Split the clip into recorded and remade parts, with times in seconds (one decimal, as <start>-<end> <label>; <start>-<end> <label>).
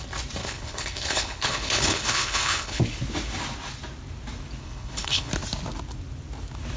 0.0-0.4 recorded; 0.4-2.8 remade; 2.8-4.6 recorded; 4.6-5.3 remade; 5.3-6.8 recorded